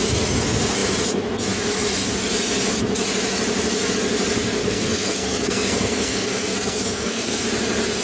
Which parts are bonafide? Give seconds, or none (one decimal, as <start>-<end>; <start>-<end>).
0.0-4.6; 7.4-8.0